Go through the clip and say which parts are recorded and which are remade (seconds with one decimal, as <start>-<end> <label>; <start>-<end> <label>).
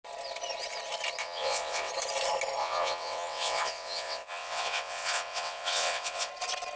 0.0-1.2 recorded; 1.2-1.9 remade; 1.9-2.6 recorded; 2.6-6.3 remade; 6.3-6.8 recorded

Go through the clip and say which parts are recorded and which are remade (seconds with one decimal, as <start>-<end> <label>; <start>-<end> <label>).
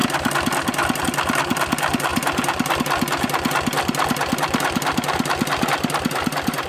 0.0-6.7 recorded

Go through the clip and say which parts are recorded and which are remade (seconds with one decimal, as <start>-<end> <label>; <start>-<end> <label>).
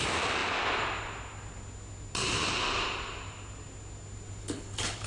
0.0-4.4 recorded; 4.4-5.1 remade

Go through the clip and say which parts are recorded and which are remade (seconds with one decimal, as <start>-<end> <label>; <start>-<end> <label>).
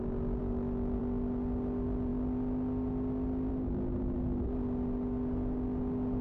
0.0-0.4 recorded; 0.4-1.0 remade; 1.0-6.2 recorded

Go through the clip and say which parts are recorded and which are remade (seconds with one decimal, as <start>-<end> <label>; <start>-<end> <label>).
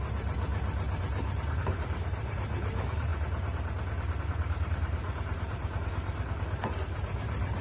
0.0-0.5 remade; 0.5-1.0 recorded; 1.0-3.1 remade; 3.1-4.2 recorded; 4.2-7.6 remade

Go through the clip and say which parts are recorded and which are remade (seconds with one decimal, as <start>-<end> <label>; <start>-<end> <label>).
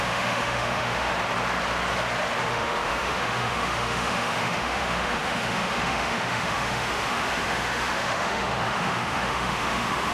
0.0-1.1 remade; 1.1-2.4 recorded; 2.4-10.1 remade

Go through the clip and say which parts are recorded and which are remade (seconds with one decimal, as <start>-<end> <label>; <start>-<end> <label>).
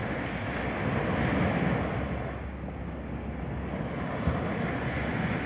0.0-4.7 recorded; 4.7-5.5 remade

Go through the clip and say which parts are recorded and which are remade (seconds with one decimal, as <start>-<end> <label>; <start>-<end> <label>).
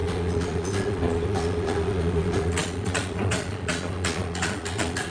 0.0-5.1 remade